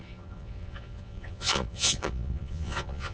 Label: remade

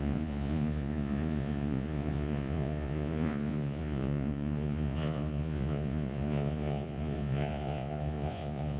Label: remade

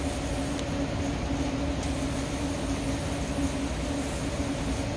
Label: recorded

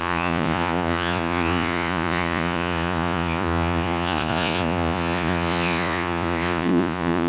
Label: remade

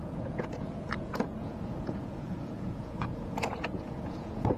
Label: remade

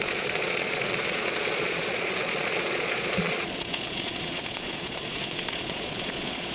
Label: remade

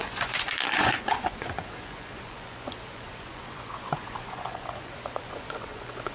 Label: remade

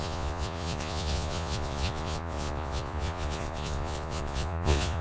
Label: remade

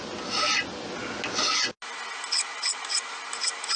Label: recorded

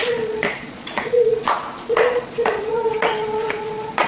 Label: remade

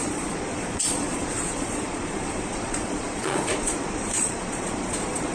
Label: remade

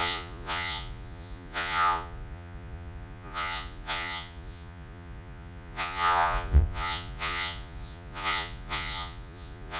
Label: remade